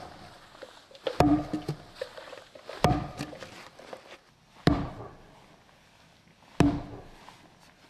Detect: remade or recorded recorded